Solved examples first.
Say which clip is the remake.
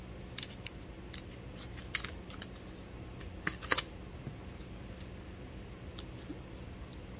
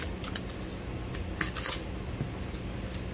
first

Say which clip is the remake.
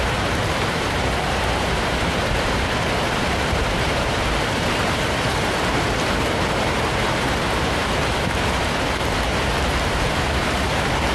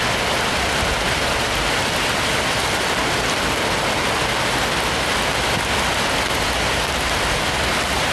first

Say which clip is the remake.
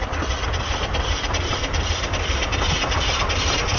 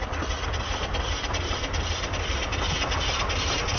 first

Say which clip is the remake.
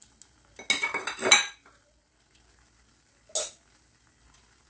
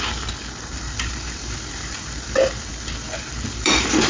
second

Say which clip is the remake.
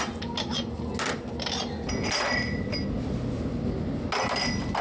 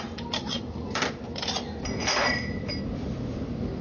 second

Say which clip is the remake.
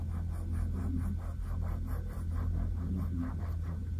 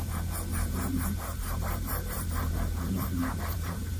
second